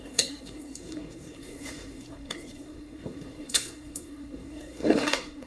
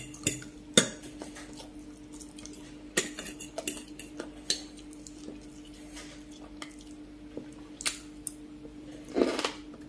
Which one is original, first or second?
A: second